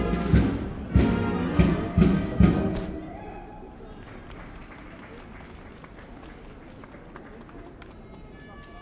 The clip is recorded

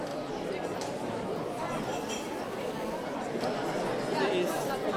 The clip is recorded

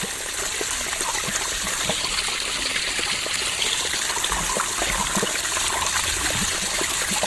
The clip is recorded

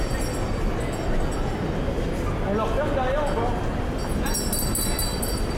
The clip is recorded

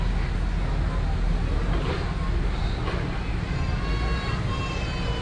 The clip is recorded